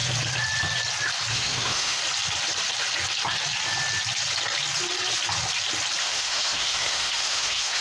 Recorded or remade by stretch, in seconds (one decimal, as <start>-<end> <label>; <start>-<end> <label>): 0.0-1.3 recorded; 1.3-2.0 remade; 2.0-6.0 recorded; 6.0-7.8 remade